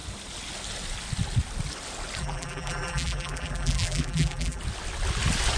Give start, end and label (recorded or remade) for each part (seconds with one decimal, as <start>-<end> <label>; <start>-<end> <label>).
0.0-2.2 recorded; 2.2-4.6 remade; 4.6-5.6 recorded